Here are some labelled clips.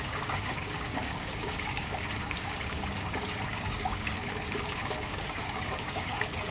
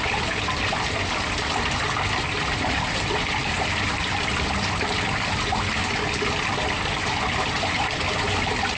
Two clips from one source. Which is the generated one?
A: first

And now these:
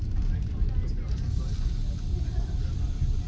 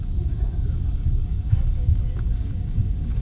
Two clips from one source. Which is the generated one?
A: second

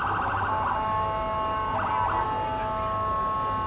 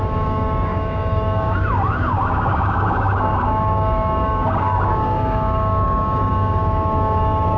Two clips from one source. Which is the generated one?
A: second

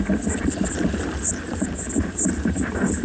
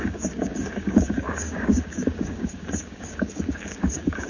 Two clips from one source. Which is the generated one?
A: second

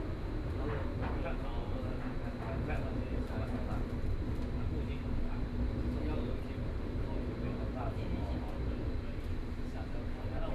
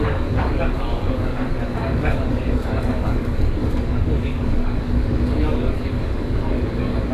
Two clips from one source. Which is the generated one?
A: second